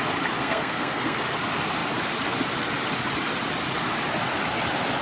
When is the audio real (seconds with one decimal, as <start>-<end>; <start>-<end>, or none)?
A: 0.0-0.4; 1.2-5.0